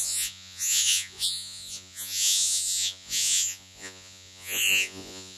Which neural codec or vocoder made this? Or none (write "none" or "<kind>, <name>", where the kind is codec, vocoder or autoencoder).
vocoder, Vocos